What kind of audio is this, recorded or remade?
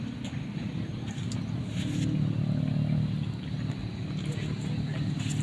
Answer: recorded